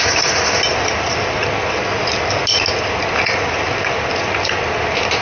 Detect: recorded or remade recorded